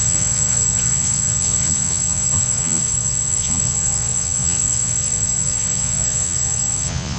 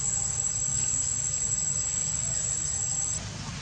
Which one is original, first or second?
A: second